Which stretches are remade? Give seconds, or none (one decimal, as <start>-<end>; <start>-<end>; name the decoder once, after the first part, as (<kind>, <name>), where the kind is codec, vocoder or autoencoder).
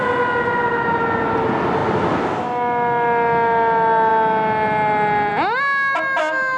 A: none